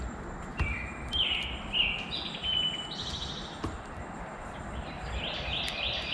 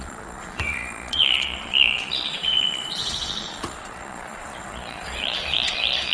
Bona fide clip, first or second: first